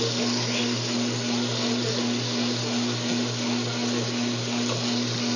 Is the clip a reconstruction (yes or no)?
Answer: no